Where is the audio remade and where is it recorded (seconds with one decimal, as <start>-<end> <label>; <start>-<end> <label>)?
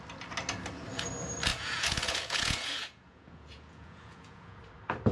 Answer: 0.0-1.5 recorded; 1.5-4.6 remade; 4.6-5.1 recorded